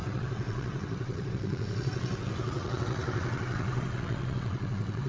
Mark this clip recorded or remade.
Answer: remade